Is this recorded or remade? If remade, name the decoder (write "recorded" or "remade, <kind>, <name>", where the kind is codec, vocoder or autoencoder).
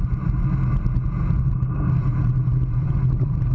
recorded